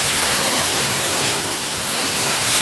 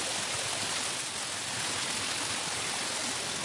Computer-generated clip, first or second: first